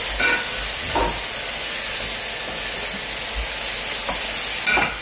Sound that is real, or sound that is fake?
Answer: real